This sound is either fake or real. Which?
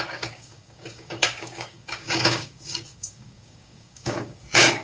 fake